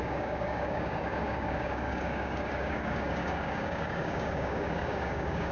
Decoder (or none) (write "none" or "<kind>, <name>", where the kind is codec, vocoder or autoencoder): codec, DAC